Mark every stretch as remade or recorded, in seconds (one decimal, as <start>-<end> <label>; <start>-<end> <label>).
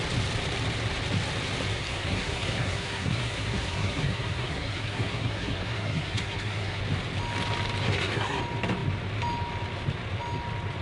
0.0-1.7 recorded; 1.7-6.8 remade; 6.8-7.8 recorded; 7.8-8.4 remade; 8.4-10.8 recorded